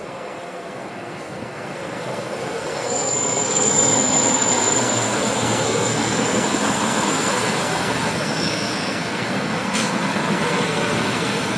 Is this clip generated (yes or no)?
yes